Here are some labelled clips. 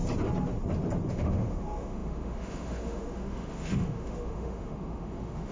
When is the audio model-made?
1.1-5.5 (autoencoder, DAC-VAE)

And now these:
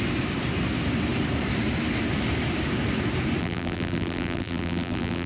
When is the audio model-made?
3.4-5.3 (vocoder, BigVGAN v2)

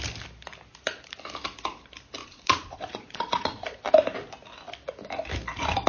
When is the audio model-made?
2.2-3.9 (vocoder, Vocos)

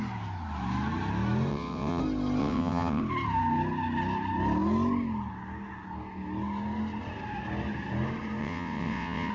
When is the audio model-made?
1.5-2.0 (vocoder, WaveNeXt); 2.4-3.0; 8.4-9.3

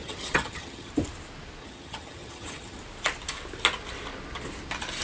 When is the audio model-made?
0.0-0.9 (vocoder, HiFi-GAN); 1.6-2.8

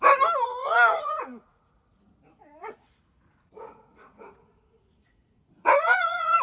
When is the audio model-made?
0.6-2.0 (vocoder, Vocos); 2.6-6.4

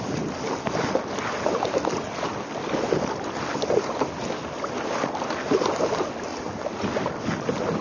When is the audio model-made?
none

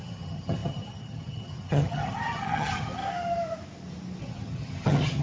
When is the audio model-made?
0.0-3.0 (vocoder, HiFi-GAN); 4.2-5.2